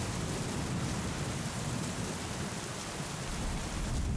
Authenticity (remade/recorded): remade